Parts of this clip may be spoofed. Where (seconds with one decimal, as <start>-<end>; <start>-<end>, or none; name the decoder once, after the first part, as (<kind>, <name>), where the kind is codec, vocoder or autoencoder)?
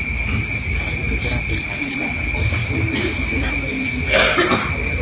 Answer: none